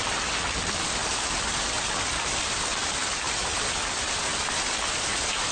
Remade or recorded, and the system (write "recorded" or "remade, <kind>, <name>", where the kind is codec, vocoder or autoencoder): recorded